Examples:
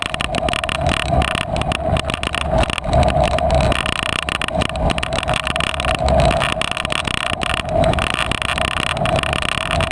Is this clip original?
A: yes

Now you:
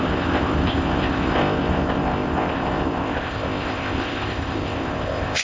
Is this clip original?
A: no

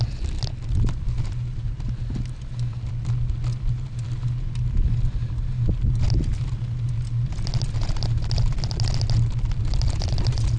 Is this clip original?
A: yes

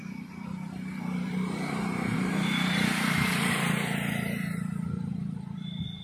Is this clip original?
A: no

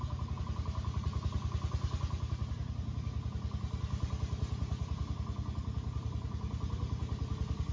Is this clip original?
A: yes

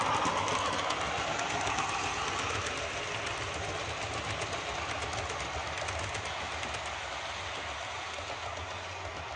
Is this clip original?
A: yes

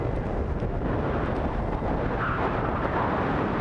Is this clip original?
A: yes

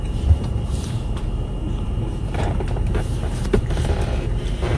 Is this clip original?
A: no